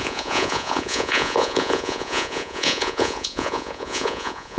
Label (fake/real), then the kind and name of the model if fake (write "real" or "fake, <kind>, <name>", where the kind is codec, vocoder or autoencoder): fake, vocoder, Vocos